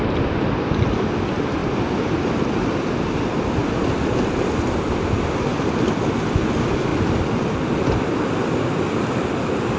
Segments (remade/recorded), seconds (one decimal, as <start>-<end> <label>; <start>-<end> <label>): 0.0-9.8 recorded